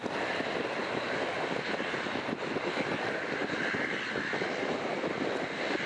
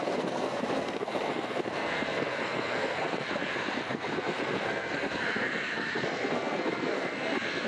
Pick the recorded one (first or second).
first